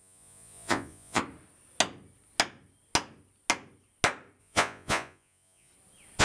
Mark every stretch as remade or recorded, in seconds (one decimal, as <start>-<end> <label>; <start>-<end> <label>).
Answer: 0.0-1.2 remade; 1.2-4.4 recorded; 4.4-5.7 remade; 5.7-6.2 recorded

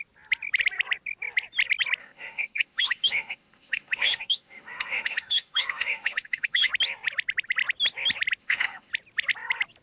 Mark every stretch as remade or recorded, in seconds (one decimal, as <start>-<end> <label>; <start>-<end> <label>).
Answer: 0.0-2.0 recorded; 2.0-6.7 remade; 6.7-8.4 recorded; 8.4-8.9 remade; 8.9-9.8 recorded

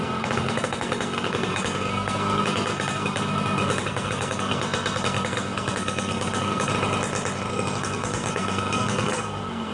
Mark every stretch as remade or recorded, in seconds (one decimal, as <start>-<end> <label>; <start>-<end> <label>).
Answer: 0.0-6.7 remade; 6.7-7.5 recorded; 7.5-9.7 remade

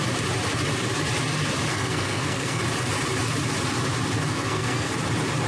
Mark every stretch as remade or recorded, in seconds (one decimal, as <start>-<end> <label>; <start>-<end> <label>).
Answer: 0.0-1.7 recorded; 1.7-2.6 remade; 2.6-4.3 recorded; 4.3-4.9 remade; 4.9-5.5 recorded

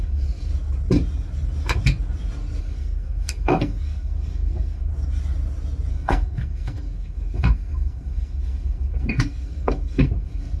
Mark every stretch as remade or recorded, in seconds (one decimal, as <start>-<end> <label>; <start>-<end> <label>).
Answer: 0.0-0.5 remade; 0.5-2.6 recorded; 2.6-4.9 remade; 4.9-5.9 recorded; 5.9-10.6 remade